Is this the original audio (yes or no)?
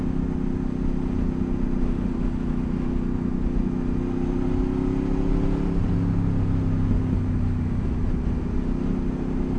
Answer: yes